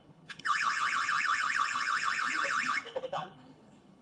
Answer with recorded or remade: remade